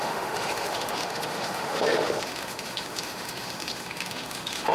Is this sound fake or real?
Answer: fake